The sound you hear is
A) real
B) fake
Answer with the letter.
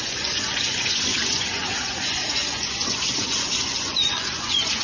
B